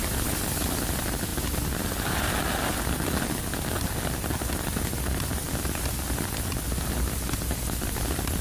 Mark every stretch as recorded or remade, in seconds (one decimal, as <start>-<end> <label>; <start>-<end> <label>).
0.0-8.4 recorded